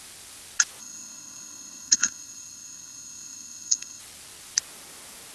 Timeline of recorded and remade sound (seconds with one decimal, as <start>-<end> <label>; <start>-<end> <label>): 0.0-0.8 recorded; 0.8-4.0 remade; 4.0-5.3 recorded